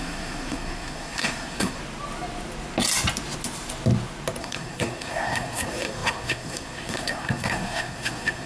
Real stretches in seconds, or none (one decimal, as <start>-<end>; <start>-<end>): 1.8-4.4